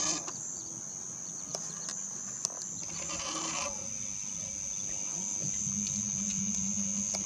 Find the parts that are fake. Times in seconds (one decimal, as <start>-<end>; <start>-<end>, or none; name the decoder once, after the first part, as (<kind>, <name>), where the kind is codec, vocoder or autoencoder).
none